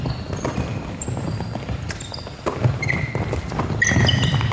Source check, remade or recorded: recorded